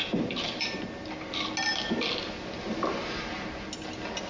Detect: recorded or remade recorded